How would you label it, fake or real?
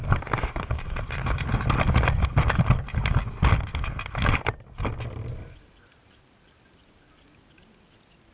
real